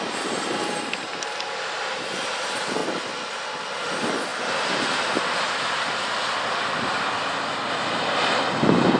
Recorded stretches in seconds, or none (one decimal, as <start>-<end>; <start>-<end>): 0.0-9.0